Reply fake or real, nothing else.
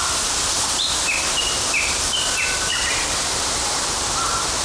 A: fake